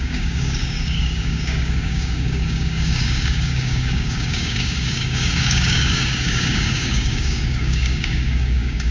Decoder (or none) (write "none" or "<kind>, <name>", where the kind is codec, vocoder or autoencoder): codec, DAC